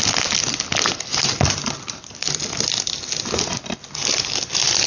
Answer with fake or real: real